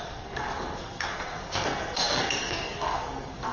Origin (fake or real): fake